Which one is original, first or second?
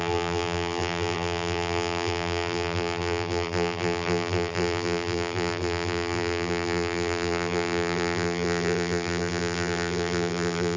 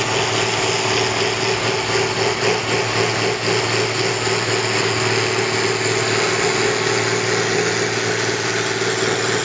second